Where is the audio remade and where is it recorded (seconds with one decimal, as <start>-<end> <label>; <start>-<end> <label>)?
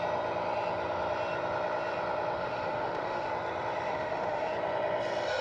0.0-2.4 recorded; 2.4-3.3 remade; 3.3-3.9 recorded; 3.9-4.5 remade; 4.5-5.4 recorded